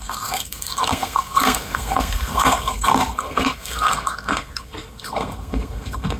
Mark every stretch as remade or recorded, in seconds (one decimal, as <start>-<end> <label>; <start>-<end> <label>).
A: 0.0-6.2 remade